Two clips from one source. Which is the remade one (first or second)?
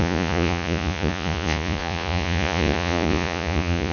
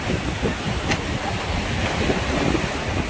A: first